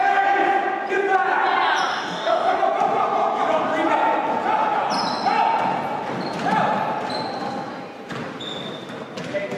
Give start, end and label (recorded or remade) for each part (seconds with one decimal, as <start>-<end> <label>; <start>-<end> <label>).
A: 0.0-1.9 recorded; 1.9-2.6 remade; 2.6-9.6 recorded